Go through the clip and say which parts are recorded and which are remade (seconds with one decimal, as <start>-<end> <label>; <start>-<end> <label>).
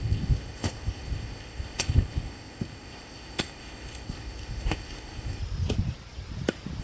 0.0-5.4 remade; 5.4-6.8 recorded